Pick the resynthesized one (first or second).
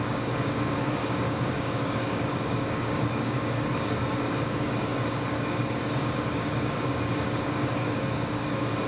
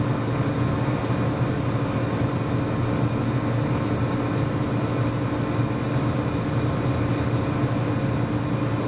first